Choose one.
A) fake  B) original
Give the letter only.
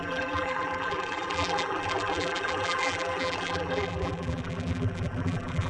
A